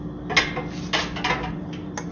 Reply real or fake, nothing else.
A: real